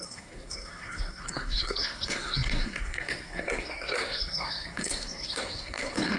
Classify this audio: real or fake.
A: fake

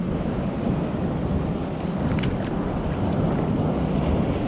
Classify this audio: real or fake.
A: real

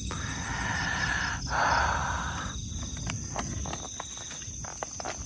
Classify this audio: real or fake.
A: real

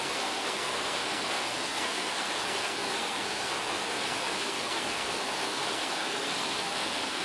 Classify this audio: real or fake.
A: fake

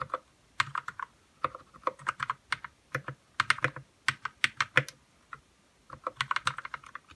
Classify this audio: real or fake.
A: real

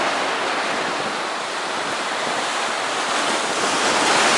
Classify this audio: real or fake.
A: real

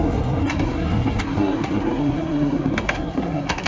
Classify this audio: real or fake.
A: fake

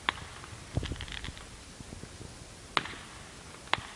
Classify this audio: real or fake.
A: real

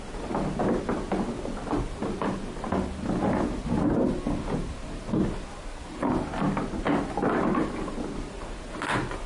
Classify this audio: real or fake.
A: real